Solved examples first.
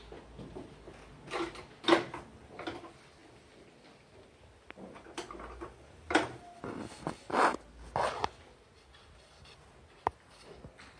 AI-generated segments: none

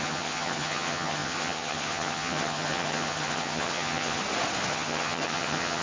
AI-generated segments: 0.0-4.2 (vocoder, HiFi-GAN); 4.7-5.8

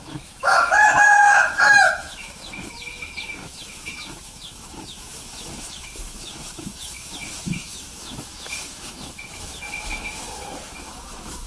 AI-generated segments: 0.0-11.5 (autoencoder, DAC-VAE)

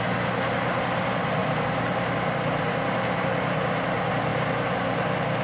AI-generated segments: 1.4-2.6 (vocoder, BigVGAN v2)